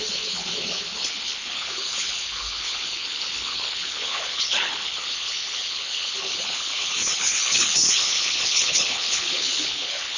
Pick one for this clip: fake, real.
fake